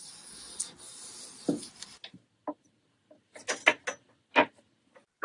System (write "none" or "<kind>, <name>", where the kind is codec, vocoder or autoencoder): none